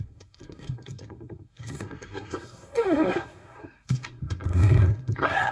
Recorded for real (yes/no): no